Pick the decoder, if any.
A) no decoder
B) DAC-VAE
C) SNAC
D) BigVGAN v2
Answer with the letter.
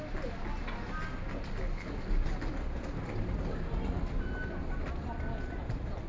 A